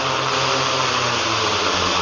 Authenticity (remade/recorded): recorded